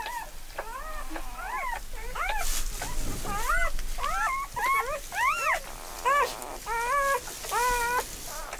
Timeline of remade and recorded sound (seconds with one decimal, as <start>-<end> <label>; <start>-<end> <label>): 0.0-8.6 recorded